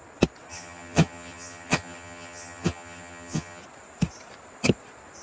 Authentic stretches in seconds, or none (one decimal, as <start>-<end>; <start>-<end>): 0.0-0.5; 3.6-5.2